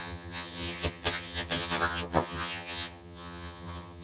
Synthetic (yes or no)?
yes